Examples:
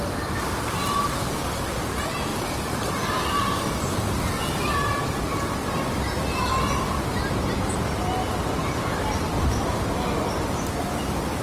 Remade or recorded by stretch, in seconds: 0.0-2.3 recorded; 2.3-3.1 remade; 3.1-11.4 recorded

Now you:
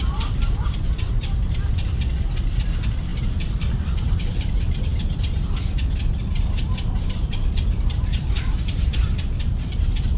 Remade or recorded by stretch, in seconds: 0.0-4.9 remade; 4.9-6.9 recorded; 6.9-10.2 remade

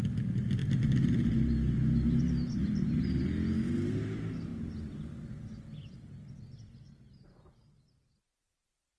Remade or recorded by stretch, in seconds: 0.0-0.6 recorded; 0.6-3.7 remade; 3.7-9.0 recorded